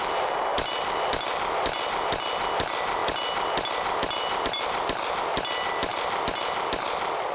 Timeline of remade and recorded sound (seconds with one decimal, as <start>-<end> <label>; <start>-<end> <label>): 0.0-7.3 recorded